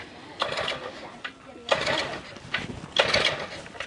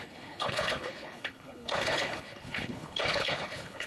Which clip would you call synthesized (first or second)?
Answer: second